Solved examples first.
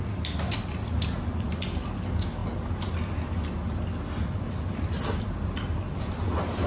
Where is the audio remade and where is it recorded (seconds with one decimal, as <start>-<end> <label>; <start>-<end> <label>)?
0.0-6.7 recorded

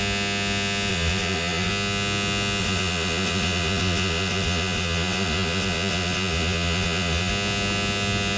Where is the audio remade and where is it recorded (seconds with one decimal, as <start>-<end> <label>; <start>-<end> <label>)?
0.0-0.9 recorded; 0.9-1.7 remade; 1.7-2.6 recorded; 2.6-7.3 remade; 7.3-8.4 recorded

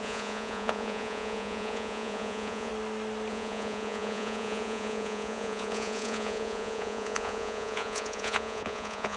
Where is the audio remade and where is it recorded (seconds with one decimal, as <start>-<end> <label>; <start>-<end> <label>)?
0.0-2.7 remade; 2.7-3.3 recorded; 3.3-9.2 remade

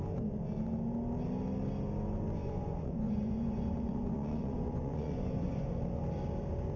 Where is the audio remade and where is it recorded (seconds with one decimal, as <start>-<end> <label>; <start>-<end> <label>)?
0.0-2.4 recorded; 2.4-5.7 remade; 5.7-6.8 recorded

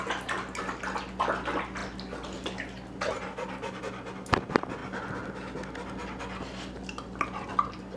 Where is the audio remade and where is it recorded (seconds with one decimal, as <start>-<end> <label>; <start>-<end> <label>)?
0.0-8.0 recorded